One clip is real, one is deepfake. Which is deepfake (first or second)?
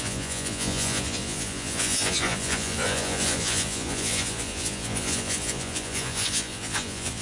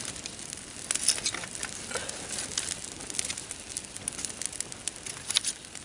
first